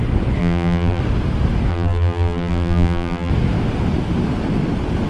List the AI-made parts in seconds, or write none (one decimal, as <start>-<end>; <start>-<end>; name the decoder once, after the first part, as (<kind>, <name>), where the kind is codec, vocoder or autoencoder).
0.4-1.0 (vocoder, BigVGAN v2); 1.7-3.3

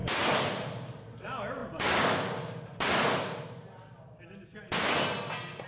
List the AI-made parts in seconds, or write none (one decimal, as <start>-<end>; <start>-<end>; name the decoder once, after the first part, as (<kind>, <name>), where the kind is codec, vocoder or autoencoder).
none

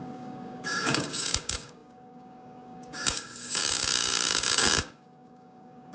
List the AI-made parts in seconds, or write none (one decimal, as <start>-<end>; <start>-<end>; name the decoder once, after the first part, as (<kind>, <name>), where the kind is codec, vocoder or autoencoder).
0.0-5.9 (codec, DAC)

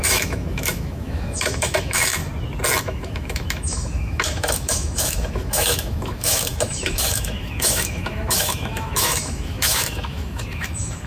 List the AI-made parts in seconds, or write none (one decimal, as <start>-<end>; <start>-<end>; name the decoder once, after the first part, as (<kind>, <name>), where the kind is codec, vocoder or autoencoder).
0.0-2.2 (autoencoder, DAC-VAE); 2.8-11.1

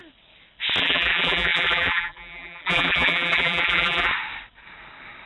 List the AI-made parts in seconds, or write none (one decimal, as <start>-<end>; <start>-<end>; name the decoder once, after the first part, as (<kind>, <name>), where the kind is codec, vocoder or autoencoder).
0.8-4.1 (vocoder, BigVGAN v2)

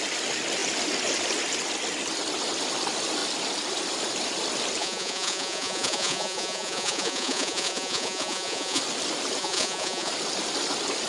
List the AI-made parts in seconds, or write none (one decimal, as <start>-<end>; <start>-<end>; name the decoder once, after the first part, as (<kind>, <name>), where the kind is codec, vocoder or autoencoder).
4.8-8.8 (vocoder, Vocos); 9.4-10.1

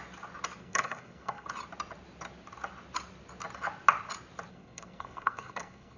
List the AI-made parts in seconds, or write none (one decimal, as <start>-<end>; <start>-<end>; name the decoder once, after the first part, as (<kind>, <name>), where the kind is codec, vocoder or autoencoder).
0.6-1.5 (codec, SNAC); 4.5-6.0